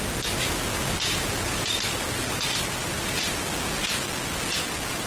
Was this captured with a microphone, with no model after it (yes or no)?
yes